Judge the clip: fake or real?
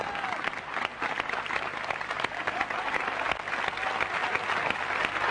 real